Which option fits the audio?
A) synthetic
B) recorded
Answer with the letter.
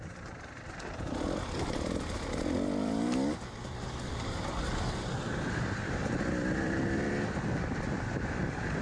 A